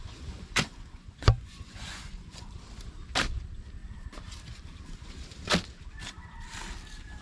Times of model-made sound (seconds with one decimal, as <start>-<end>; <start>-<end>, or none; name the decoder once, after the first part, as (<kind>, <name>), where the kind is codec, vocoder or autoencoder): 0.0-2.5 (vocoder, Vocos)